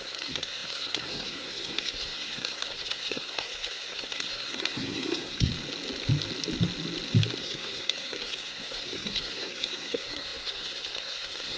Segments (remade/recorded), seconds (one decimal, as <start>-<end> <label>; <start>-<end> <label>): 0.0-5.5 remade; 5.5-7.4 recorded; 7.4-11.6 remade